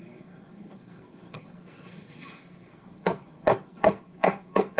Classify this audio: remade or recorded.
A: remade